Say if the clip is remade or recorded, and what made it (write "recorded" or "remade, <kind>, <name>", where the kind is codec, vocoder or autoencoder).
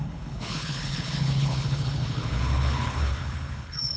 remade, codec, HILCodec